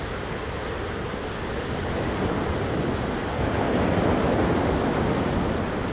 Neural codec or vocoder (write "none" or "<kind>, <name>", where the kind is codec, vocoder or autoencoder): none